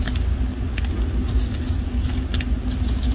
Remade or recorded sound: recorded